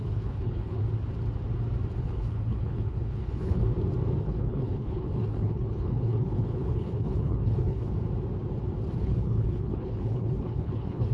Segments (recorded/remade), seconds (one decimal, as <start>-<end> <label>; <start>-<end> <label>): 0.0-0.8 remade; 0.8-2.0 recorded; 2.0-3.6 remade; 3.6-4.2 recorded; 4.2-7.9 remade; 7.9-9.0 recorded; 9.0-11.1 remade